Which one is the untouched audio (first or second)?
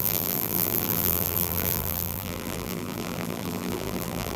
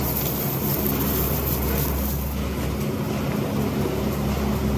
second